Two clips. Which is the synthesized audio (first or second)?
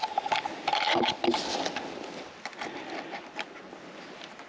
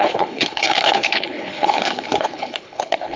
second